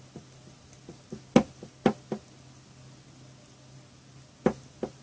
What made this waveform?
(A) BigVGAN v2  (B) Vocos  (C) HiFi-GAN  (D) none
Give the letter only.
D